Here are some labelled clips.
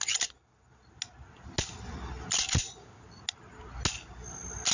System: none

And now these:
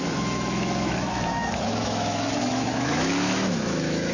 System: autoencoder, DAC-VAE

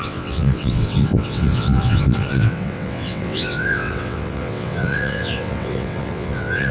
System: vocoder, WaveNeXt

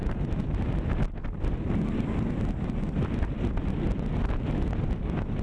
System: none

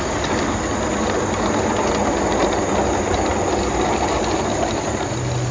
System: none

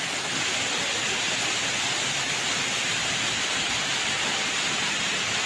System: none